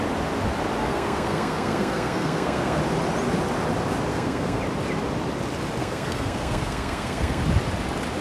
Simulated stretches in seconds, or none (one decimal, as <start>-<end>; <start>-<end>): 0.8-2.8; 4.1-4.6; 5.8-7.4